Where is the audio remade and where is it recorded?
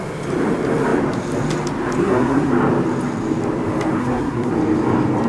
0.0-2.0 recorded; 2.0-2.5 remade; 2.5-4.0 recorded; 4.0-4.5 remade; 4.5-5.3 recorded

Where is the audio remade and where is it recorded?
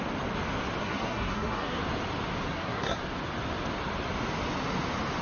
0.0-0.8 recorded; 0.8-1.8 remade; 1.8-2.5 recorded; 2.5-3.0 remade; 3.0-5.2 recorded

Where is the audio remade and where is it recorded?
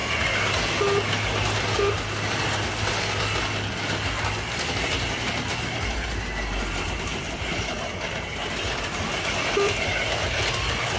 0.0-11.0 recorded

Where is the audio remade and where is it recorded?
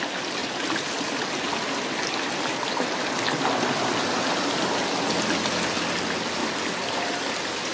0.0-7.7 recorded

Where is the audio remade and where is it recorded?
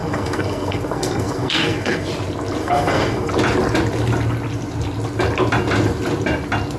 0.0-2.1 remade; 2.1-2.6 recorded; 2.6-3.3 remade; 3.3-6.8 recorded